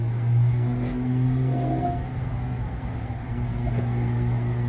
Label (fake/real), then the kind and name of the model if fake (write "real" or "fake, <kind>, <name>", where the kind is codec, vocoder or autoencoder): fake, codec, SNAC